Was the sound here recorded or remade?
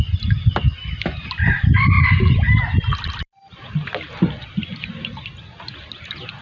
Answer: remade